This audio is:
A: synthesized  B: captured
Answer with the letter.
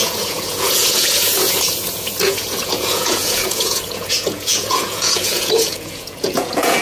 A